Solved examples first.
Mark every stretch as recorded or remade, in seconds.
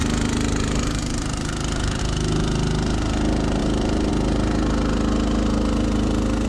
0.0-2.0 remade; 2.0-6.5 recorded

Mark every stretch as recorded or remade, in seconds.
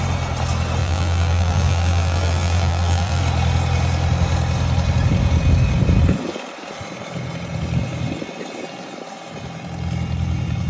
0.0-0.8 recorded; 0.8-3.2 remade; 3.2-10.7 recorded